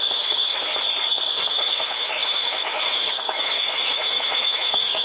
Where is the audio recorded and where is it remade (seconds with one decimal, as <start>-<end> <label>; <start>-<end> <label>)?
0.0-0.7 remade; 0.7-1.3 recorded; 1.3-5.0 remade